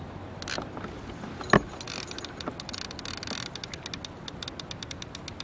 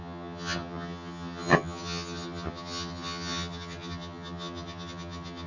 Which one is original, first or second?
first